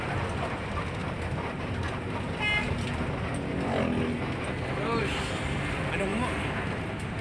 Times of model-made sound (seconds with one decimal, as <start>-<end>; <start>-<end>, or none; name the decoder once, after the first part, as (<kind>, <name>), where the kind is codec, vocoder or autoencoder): none